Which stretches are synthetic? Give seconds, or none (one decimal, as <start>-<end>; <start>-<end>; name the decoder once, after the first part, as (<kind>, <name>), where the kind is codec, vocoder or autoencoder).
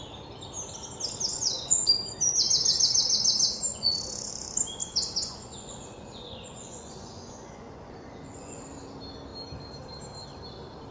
1.3-1.9 (vocoder, Vocos); 3.7-4.3; 4.8-8.6